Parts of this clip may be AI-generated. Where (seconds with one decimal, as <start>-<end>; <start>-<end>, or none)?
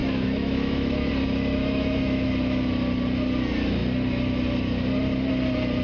0.0-1.1; 1.6-2.3